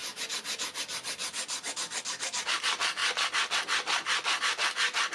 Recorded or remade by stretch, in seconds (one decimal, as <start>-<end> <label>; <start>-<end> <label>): 0.0-5.1 recorded